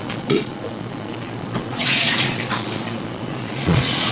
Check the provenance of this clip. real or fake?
fake